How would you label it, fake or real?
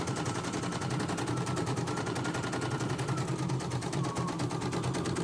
fake